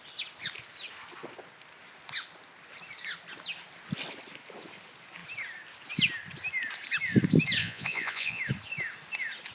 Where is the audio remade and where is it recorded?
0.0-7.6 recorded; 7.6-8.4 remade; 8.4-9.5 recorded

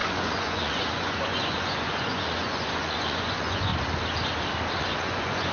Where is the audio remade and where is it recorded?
0.0-3.7 remade; 3.7-4.8 recorded; 4.8-5.5 remade

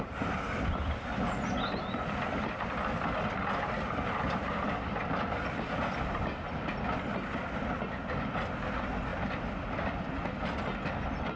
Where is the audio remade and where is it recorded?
0.0-11.4 recorded

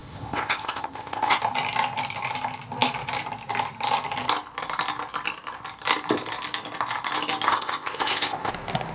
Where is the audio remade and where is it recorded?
0.0-1.4 remade; 1.4-7.5 recorded; 7.5-8.5 remade; 8.5-8.9 recorded